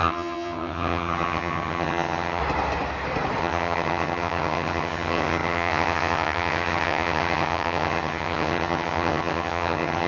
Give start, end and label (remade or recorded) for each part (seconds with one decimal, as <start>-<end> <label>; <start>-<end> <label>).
0.0-2.4 remade; 2.4-3.4 recorded; 3.4-10.1 remade

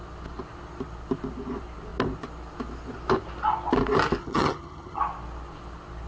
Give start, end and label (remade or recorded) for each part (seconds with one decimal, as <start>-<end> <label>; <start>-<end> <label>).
0.0-4.2 recorded; 4.2-5.0 remade; 5.0-6.1 recorded

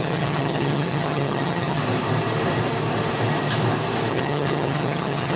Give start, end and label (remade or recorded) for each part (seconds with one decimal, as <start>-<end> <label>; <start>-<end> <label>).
0.0-1.8 remade; 1.8-4.1 recorded; 4.1-5.4 remade

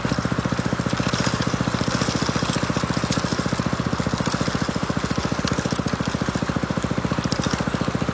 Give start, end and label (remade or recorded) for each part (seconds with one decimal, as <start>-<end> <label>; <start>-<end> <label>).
0.0-8.1 recorded

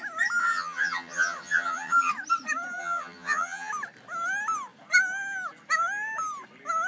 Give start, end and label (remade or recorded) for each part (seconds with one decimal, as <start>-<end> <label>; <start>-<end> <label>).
0.0-0.4 recorded; 0.4-2.1 remade; 2.1-2.8 recorded; 2.8-3.7 remade; 3.7-6.9 recorded

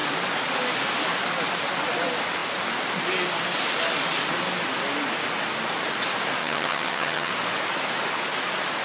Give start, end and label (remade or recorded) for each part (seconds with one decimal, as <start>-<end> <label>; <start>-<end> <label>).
0.0-6.4 recorded; 6.4-7.3 remade; 7.3-8.8 recorded

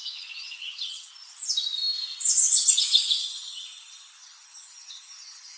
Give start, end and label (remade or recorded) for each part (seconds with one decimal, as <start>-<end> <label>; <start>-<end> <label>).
0.0-0.4 recorded; 0.4-1.1 remade; 1.1-3.2 recorded; 3.2-5.6 remade